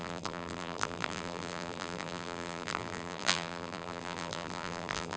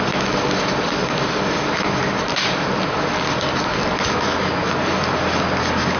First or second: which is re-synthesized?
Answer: first